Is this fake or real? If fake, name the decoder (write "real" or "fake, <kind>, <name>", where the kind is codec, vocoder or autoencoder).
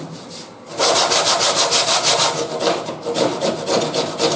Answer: real